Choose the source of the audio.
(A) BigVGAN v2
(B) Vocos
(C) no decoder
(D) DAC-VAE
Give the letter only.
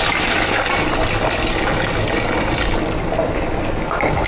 C